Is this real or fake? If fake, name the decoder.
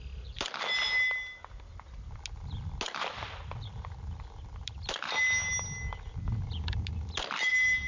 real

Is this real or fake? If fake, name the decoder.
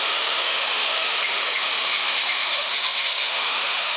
fake, autoencoder, DAC-VAE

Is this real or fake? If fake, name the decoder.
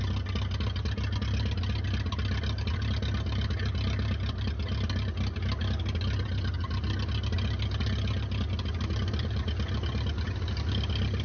real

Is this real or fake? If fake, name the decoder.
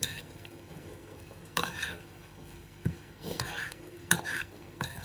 fake, codec, SNAC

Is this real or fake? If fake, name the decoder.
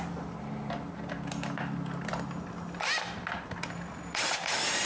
real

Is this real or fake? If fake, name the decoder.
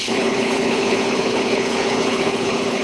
fake, codec, HILCodec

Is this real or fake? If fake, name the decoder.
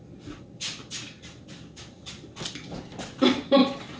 real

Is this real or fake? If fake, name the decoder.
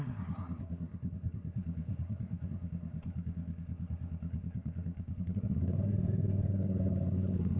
fake, codec, SNAC